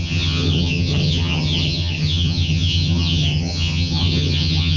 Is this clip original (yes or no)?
no